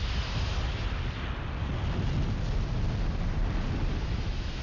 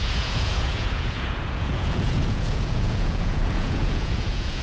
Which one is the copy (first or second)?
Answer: second